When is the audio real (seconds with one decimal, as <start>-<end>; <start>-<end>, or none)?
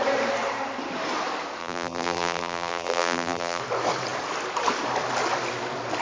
0.0-1.6; 3.6-6.0